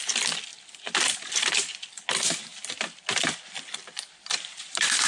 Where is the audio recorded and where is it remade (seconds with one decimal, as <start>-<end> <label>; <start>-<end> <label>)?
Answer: 0.0-0.5 recorded; 0.5-1.9 remade; 1.9-2.5 recorded; 2.5-5.1 remade